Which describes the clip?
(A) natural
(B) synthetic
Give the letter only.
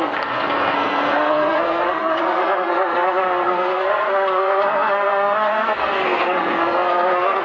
B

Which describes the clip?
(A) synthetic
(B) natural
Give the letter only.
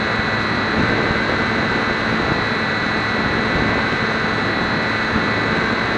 B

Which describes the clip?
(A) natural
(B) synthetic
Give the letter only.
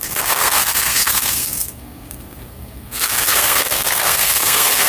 B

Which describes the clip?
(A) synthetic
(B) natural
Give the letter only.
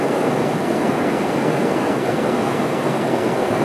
A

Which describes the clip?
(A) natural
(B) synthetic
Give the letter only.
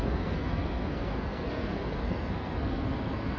B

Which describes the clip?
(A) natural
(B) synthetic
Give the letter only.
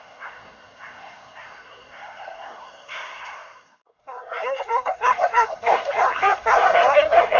B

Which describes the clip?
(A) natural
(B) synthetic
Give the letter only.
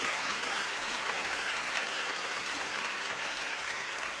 B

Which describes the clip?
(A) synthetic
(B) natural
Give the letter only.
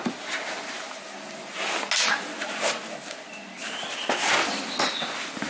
B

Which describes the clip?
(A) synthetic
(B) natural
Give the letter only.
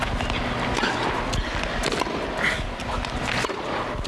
B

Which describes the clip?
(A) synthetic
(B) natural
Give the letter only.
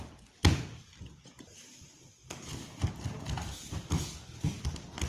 B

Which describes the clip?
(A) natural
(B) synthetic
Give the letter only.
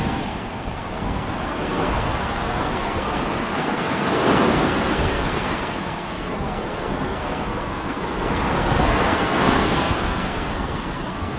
B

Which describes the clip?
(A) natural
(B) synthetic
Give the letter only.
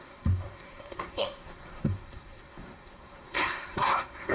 B